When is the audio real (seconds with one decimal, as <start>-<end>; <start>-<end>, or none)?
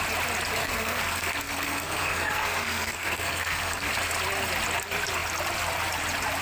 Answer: 0.0-0.6; 3.9-6.4